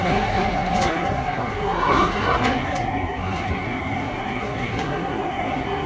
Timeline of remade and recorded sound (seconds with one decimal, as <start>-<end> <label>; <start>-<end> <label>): 0.0-5.9 remade